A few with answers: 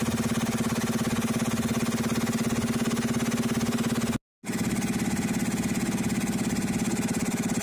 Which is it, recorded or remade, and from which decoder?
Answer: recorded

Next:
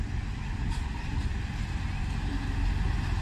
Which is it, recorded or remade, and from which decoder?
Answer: recorded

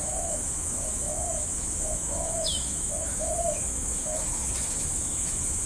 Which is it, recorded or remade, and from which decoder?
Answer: remade, autoencoder, DAC-VAE